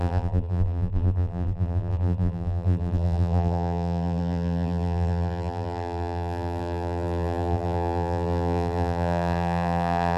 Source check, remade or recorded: remade